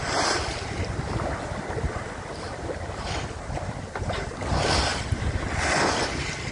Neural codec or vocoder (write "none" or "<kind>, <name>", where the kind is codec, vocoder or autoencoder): none